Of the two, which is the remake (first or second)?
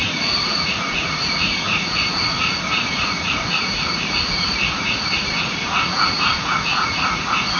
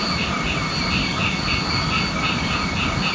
first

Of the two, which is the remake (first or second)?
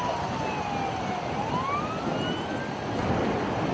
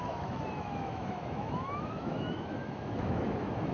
second